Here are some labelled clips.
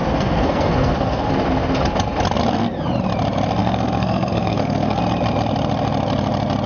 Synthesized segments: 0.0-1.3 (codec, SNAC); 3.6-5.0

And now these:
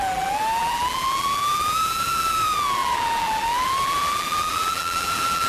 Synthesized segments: 0.0-5.5 (vocoder, BigVGAN v2)

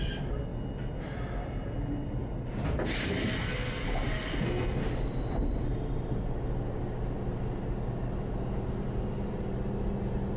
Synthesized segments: none

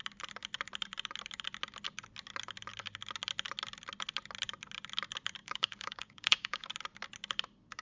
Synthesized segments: 5.4-6.7 (codec, DAC)

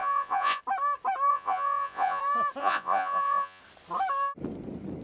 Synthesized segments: 0.0-0.6 (vocoder, Vocos); 1.3-2.2; 2.6-3.6

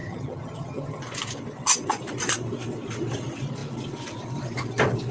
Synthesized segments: 0.0-1.0 (vocoder, HiFi-GAN)

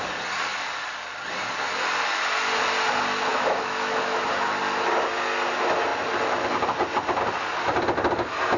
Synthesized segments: 3.3-4.2 (autoencoder, DAC-VAE)